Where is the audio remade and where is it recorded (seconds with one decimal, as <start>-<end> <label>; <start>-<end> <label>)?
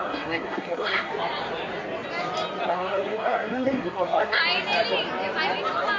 0.0-1.1 remade; 1.1-2.7 recorded; 2.7-4.4 remade; 4.4-6.0 recorded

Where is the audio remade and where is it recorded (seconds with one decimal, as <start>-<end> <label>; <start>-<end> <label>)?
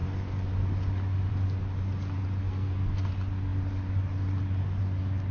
0.0-2.4 recorded; 2.4-3.1 remade; 3.1-5.3 recorded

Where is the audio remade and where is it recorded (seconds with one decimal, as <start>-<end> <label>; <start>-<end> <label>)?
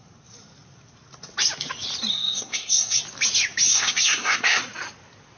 0.0-2.1 recorded; 2.1-3.0 remade; 3.0-3.7 recorded; 3.7-4.6 remade; 4.6-5.4 recorded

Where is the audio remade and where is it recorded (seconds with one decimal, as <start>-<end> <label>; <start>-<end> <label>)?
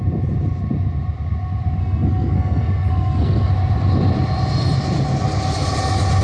0.0-1.8 recorded; 1.8-3.5 remade; 3.5-6.2 recorded